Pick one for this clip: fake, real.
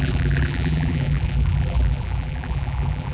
fake